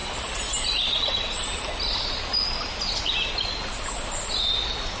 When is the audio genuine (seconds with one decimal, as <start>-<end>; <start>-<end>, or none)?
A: 0.0-5.0